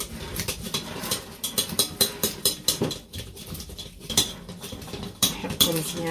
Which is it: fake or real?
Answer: fake